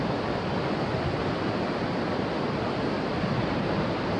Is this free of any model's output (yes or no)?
yes